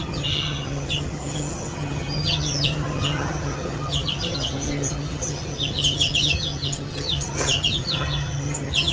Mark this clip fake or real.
fake